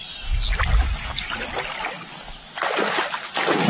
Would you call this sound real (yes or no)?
yes